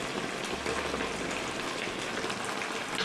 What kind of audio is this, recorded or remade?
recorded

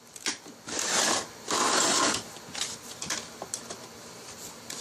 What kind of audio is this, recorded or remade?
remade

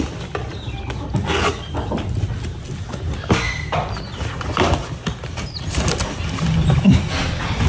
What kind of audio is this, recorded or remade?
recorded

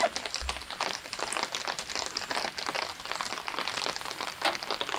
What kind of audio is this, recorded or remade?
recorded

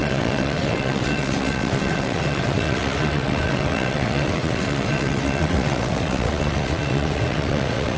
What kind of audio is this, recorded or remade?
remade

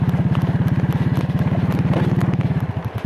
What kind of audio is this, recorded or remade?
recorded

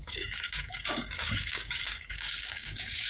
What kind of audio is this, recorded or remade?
remade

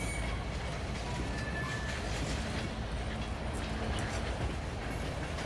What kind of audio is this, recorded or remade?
recorded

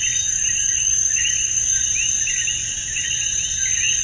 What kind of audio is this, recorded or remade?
recorded